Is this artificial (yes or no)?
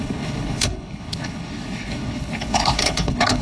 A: yes